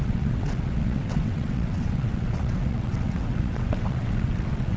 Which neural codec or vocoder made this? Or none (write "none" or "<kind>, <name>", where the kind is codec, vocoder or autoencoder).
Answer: vocoder, WaveNeXt